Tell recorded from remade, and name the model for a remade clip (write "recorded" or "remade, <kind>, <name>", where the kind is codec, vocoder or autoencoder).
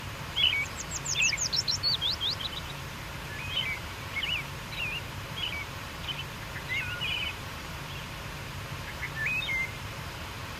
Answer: remade, vocoder, BigVGAN v2